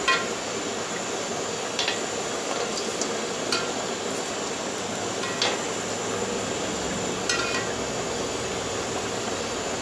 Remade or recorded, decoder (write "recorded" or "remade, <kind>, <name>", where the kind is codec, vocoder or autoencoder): recorded